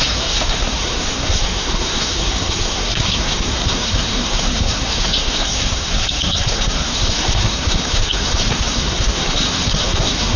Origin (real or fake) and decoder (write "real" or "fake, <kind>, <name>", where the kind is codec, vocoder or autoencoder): fake, codec, SNAC